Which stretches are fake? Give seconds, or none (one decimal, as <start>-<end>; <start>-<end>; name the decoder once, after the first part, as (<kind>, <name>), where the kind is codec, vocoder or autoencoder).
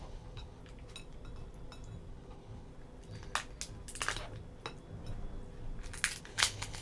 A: 0.0-0.6 (codec, HILCodec); 2.1-2.7; 6.2-6.8